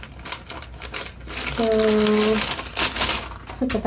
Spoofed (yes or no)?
no